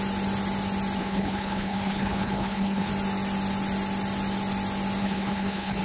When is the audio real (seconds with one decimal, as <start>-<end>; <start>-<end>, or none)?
0.0-1.0; 2.9-5.0